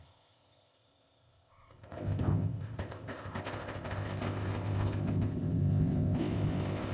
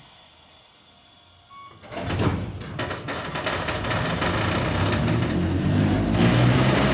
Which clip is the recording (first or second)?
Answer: second